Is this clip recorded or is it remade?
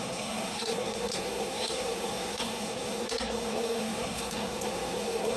remade